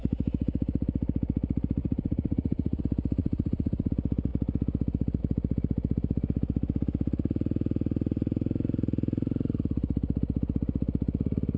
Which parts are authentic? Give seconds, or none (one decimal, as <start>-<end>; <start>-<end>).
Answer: 0.0-1.8; 2.8-3.2; 3.9-11.6